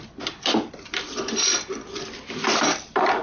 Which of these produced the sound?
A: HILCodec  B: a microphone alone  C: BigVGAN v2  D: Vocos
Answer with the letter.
C